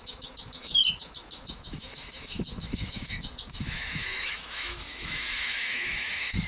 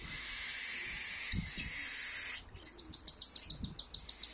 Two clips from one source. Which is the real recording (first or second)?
second